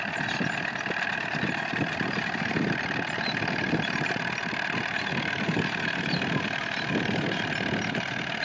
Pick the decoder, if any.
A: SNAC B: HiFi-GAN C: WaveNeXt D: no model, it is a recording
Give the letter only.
D